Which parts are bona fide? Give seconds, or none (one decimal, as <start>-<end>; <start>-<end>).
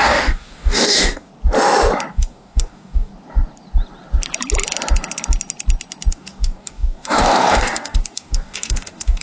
1.3-2.1; 3.1-6.1